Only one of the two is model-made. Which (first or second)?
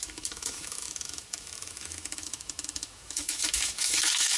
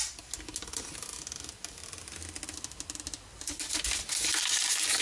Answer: first